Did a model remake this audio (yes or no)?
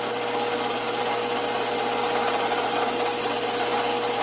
no